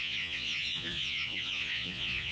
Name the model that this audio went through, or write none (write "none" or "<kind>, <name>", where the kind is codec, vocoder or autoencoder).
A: vocoder, Vocos